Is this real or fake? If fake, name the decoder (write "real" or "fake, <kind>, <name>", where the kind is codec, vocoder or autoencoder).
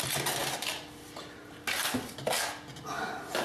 real